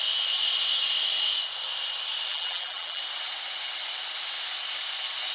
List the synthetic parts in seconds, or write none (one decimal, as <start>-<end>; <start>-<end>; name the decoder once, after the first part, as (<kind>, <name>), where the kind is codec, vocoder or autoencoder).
2.3-3.0 (vocoder, BigVGAN v2)